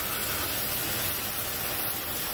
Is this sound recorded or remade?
recorded